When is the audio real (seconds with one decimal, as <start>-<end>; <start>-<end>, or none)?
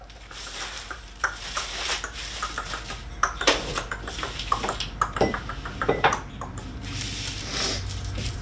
none